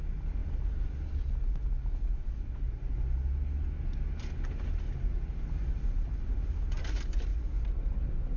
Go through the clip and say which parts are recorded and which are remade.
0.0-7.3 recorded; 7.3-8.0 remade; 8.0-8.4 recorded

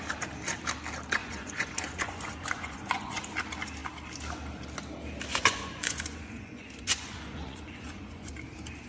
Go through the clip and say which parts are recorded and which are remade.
0.0-1.2 recorded; 1.2-3.2 remade; 3.2-5.3 recorded; 5.3-8.3 remade; 8.3-8.9 recorded

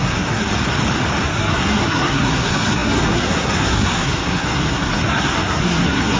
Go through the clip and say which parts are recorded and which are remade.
0.0-0.5 remade; 0.5-1.2 recorded; 1.2-6.2 remade

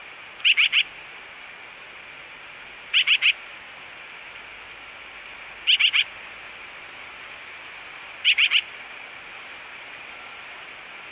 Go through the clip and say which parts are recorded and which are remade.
0.0-11.1 recorded

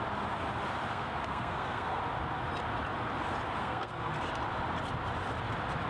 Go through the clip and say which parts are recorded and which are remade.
0.0-0.9 recorded; 0.9-2.0 remade; 2.0-3.6 recorded; 3.6-4.1 remade; 4.1-5.9 recorded

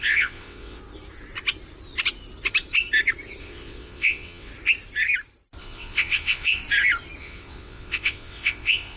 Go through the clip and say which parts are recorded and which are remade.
0.0-0.8 remade; 0.8-3.4 recorded; 3.4-4.5 remade; 4.5-5.6 recorded; 5.6-6.6 remade; 6.6-7.2 recorded; 7.2-9.0 remade